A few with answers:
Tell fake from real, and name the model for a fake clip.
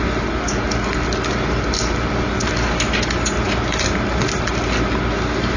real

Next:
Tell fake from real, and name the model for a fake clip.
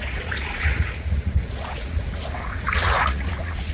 fake, vocoder, Vocos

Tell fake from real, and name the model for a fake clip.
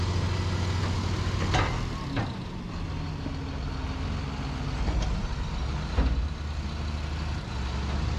real